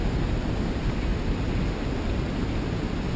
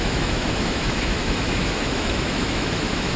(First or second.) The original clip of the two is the first